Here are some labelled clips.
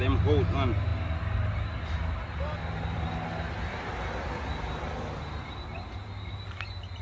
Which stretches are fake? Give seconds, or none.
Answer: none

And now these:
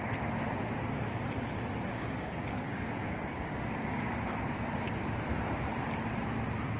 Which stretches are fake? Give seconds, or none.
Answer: 1.9-4.1 (codec, DAC)

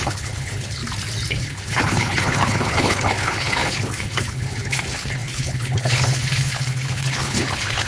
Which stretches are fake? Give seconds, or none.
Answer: 0.0-0.8 (codec, HILCodec); 1.3-7.9

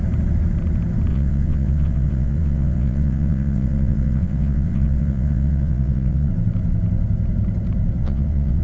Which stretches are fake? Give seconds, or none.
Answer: 1.1-6.3 (vocoder, WaveNeXt); 8.0-8.6

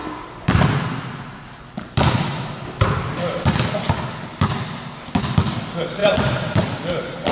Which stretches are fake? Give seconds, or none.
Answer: 0.0-3.7 (vocoder, BigVGAN v2); 6.0-6.6

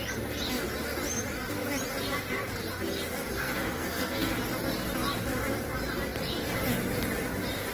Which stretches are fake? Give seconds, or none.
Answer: 3.4-4.3 (codec, SNAC)